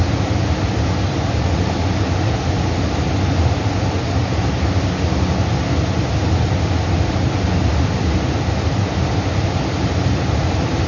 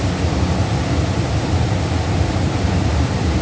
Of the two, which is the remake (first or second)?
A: second